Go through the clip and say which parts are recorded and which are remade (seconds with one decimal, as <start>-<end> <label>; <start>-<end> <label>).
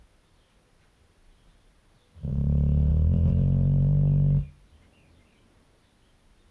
0.0-2.3 recorded; 2.3-2.9 remade; 2.9-6.5 recorded